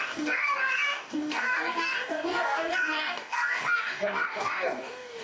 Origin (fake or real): fake